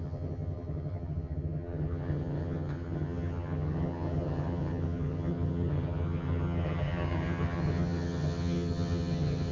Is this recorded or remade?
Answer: remade